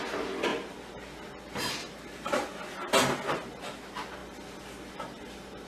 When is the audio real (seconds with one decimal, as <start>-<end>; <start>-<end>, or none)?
0.0-5.7